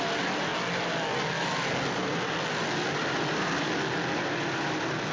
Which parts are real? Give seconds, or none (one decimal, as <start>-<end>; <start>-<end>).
0.0-5.1